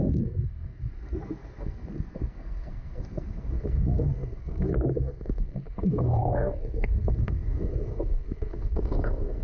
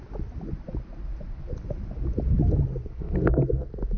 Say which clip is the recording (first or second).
second